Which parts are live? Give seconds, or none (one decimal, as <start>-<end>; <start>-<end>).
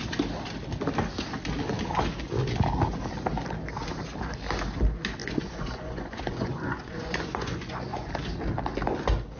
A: 0.0-5.2; 8.1-9.4